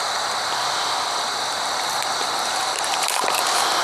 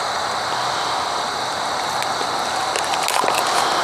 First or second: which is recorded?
second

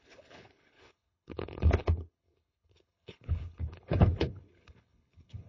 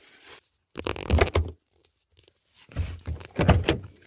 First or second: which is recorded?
second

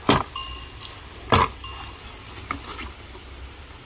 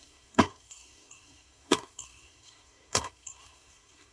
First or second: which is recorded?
first